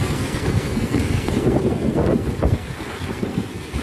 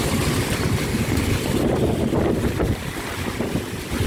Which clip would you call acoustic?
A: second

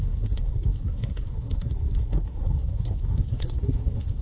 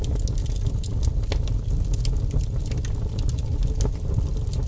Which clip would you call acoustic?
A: second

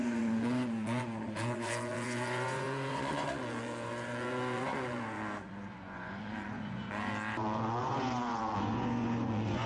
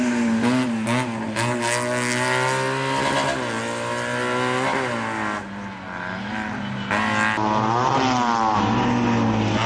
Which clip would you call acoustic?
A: second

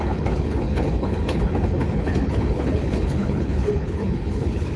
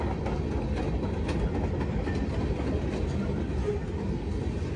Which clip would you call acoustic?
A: second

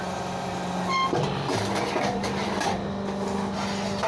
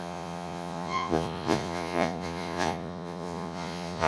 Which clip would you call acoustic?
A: first